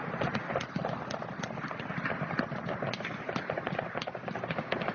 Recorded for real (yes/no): yes